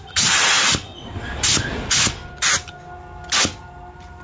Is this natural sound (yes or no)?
yes